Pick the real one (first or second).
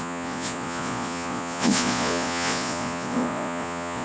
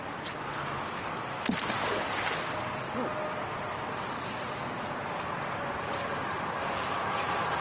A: second